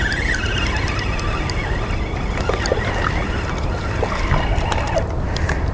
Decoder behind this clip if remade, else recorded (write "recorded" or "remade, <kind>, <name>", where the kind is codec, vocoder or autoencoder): recorded